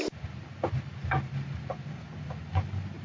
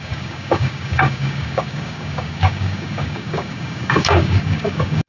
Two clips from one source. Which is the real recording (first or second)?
first